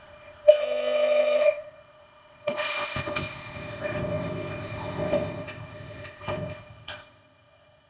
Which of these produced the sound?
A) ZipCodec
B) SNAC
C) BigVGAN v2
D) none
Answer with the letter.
A